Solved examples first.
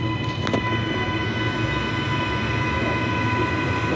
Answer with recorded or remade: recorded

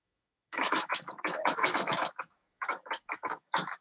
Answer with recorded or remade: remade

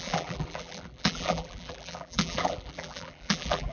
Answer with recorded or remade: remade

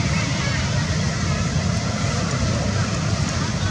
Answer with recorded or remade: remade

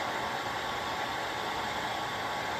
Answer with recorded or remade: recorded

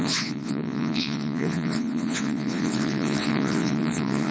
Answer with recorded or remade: remade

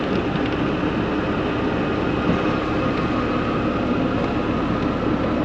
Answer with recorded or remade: recorded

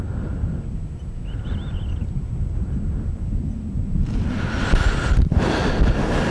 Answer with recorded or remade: recorded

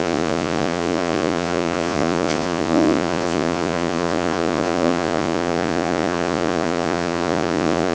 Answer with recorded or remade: remade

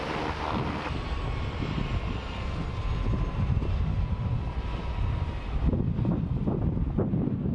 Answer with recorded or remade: recorded